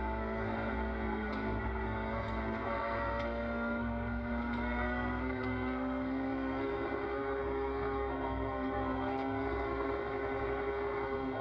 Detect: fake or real fake